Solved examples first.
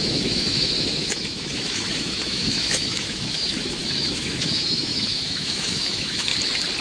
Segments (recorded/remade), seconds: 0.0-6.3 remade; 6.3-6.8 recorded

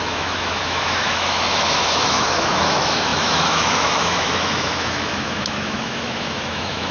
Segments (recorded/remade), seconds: 0.0-6.9 remade

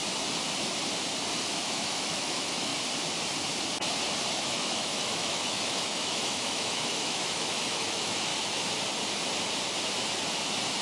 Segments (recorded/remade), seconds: 0.0-1.4 recorded; 1.4-2.7 remade; 2.7-4.3 recorded; 4.3-8.3 remade; 8.3-10.8 recorded

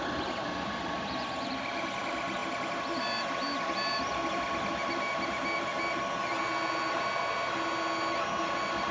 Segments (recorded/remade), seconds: 0.0-8.9 recorded

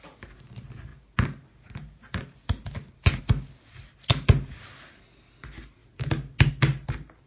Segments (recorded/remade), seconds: 0.0-7.3 recorded

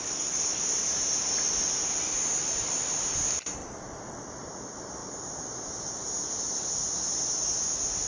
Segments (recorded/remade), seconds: 0.0-8.1 recorded

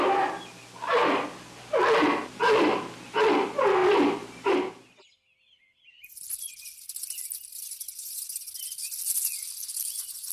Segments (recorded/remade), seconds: 0.0-10.3 recorded

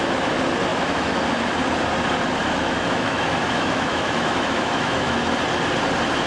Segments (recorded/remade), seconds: 0.0-0.7 recorded; 0.7-1.2 remade; 1.2-2.4 recorded; 2.4-5.2 remade; 5.2-6.3 recorded